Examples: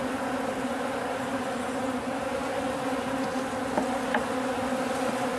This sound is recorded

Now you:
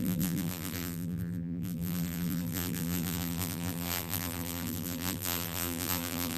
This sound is remade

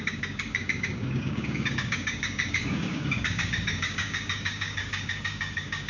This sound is remade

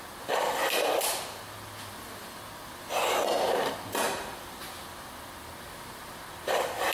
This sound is recorded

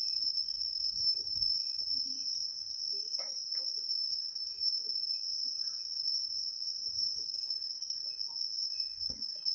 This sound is remade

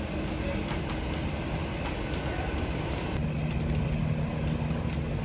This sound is recorded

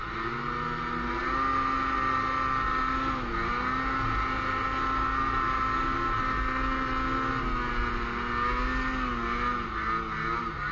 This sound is recorded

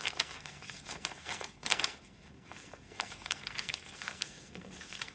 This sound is remade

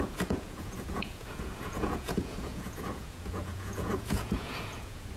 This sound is remade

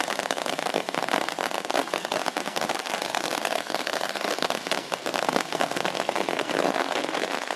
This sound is remade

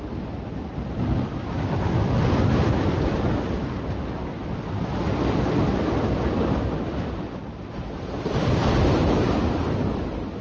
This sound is recorded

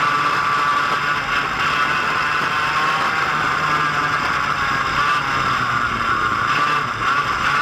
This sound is recorded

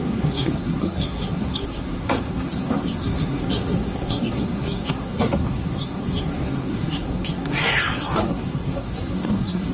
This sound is remade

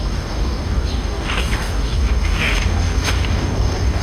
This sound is remade